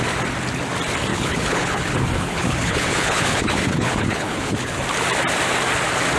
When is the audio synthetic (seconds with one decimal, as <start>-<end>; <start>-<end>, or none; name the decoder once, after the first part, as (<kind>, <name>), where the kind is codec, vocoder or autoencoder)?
1.1-4.8 (codec, HILCodec)